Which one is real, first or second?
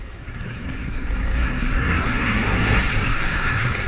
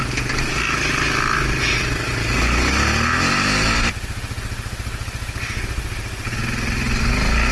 second